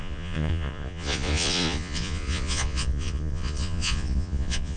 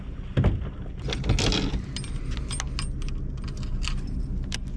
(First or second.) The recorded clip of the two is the second